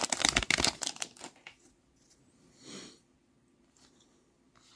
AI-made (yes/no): no